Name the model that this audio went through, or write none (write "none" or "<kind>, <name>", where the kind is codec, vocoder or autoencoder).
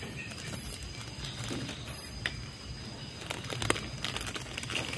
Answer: none